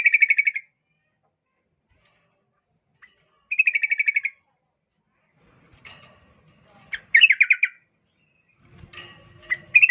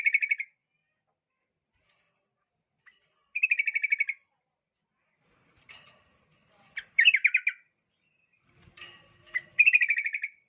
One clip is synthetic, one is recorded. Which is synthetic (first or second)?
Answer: second